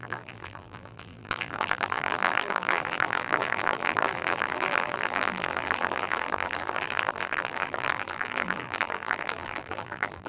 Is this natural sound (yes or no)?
no